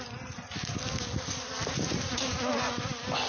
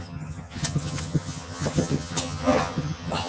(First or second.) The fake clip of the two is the second